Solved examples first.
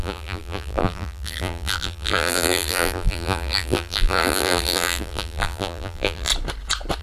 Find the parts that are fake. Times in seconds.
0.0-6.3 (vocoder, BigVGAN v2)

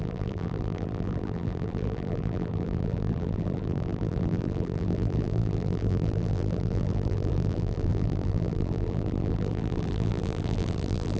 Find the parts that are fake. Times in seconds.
0.0-11.2 (vocoder, BigVGAN v2)

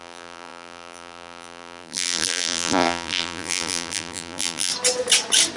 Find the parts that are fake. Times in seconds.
0.0-4.7 (vocoder, BigVGAN v2)